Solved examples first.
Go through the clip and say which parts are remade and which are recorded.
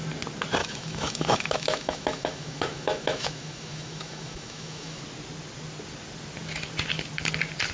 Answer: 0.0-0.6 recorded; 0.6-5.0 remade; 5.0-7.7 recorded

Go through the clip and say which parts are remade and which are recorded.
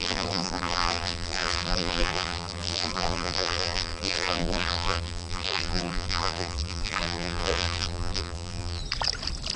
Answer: 0.0-8.8 remade; 8.8-9.6 recorded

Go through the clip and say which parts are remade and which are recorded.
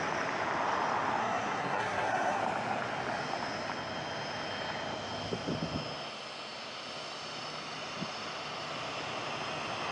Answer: 0.0-1.2 recorded; 1.2-2.4 remade; 2.4-9.9 recorded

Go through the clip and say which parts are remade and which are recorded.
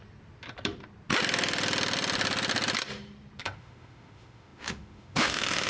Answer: 0.0-3.4 recorded; 3.4-5.7 remade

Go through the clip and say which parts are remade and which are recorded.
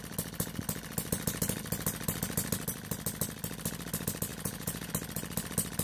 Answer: 0.0-4.3 recorded; 4.3-4.9 remade; 4.9-5.8 recorded